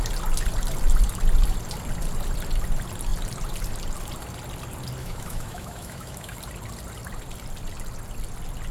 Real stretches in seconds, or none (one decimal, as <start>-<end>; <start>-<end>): 0.0-5.0; 6.4-8.7